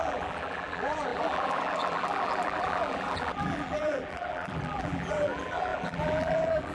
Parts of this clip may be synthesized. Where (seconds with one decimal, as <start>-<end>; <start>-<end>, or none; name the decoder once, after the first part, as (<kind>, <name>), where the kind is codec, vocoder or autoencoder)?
0.0-6.7 (vocoder, BigVGAN v2)